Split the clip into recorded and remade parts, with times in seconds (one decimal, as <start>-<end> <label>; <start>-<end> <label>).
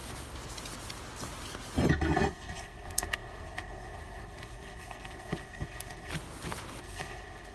0.0-1.9 recorded; 1.9-6.1 remade; 6.1-6.8 recorded; 6.8-7.5 remade